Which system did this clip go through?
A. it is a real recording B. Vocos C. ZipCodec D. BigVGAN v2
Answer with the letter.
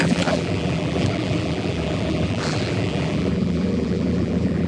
D